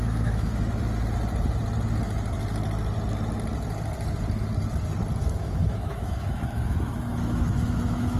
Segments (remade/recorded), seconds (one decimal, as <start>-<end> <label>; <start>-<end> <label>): 0.0-0.5 remade; 0.5-5.2 recorded; 5.2-8.2 remade